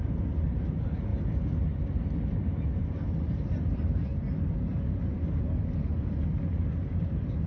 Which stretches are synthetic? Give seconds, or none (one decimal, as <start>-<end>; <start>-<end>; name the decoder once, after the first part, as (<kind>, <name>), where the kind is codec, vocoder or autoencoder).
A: 0.0-1.1 (vocoder, BigVGAN v2); 2.8-4.1; 6.0-7.5